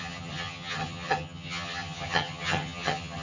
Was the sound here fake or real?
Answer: fake